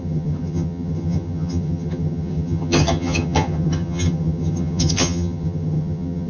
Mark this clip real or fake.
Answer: fake